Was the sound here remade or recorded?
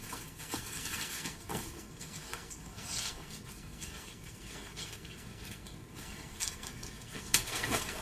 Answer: remade